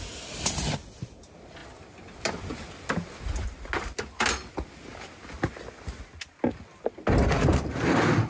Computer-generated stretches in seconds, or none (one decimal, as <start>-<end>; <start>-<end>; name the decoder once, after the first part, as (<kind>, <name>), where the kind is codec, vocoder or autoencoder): none